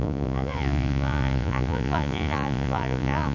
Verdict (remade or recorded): remade